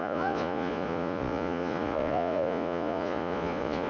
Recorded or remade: remade